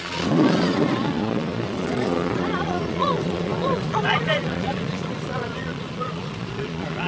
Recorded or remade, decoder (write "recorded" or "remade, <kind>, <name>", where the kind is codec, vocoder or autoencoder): remade, vocoder, Vocos